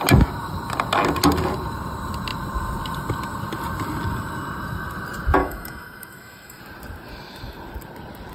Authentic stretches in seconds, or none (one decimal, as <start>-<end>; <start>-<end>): 0.0-5.4; 6.6-8.3